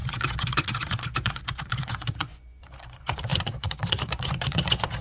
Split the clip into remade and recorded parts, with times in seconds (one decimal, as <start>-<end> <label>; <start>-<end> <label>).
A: 0.0-5.0 remade